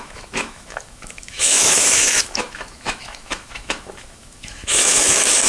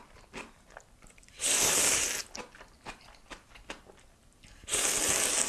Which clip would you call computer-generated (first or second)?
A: first